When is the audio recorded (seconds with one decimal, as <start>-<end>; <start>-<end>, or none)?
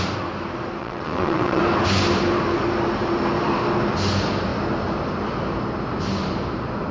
0.0-0.8; 1.6-6.9